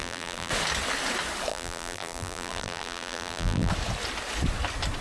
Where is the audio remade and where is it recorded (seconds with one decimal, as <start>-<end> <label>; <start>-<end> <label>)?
0.0-0.5 remade; 0.5-1.5 recorded; 1.5-3.7 remade; 3.7-5.0 recorded